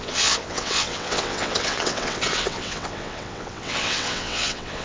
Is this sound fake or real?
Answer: fake